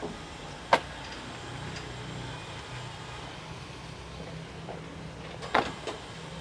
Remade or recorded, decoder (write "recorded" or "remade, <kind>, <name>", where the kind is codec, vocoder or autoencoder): recorded